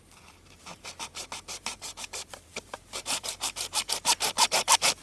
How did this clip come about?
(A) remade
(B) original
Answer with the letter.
A